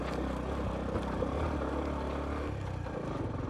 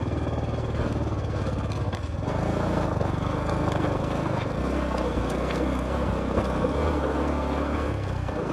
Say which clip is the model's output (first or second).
second